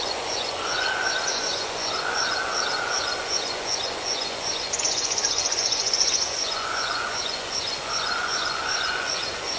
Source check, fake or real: fake